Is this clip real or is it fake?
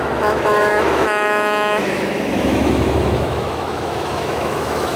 fake